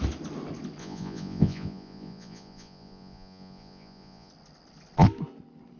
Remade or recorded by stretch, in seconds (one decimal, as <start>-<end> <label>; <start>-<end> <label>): 0.0-0.8 recorded; 0.8-4.3 remade; 4.3-5.8 recorded